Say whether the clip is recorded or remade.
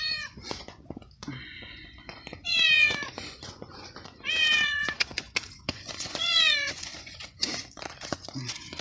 remade